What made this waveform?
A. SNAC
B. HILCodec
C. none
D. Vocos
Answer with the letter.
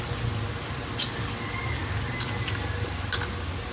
C